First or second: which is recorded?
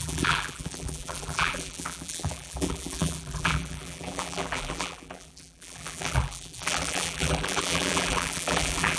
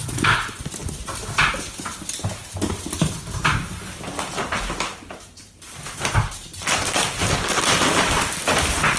second